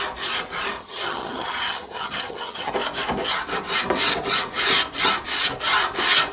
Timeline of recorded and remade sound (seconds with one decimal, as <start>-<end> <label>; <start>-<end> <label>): 0.0-0.8 recorded; 0.8-2.7 remade; 2.7-6.3 recorded